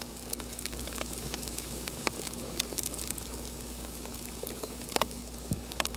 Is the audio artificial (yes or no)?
yes